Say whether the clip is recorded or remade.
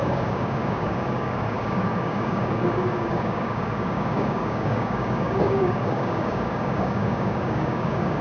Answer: remade